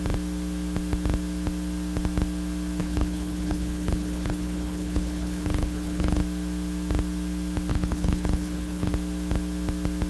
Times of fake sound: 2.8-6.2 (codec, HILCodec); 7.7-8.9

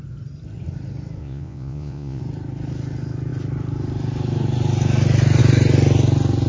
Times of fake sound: 1.2-2.2 (vocoder, Vocos)